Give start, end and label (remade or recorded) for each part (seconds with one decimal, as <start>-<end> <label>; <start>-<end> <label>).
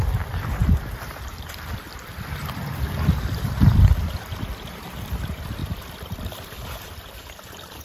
0.0-0.6 recorded; 0.6-4.3 remade; 4.3-5.6 recorded; 5.6-7.8 remade